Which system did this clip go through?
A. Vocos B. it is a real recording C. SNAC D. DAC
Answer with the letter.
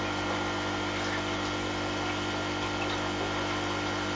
B